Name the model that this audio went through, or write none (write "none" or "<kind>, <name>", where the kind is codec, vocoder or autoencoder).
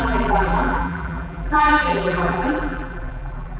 vocoder, BigVGAN v2